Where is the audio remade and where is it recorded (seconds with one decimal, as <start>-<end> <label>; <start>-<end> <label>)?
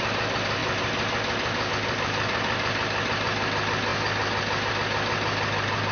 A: 0.0-5.9 recorded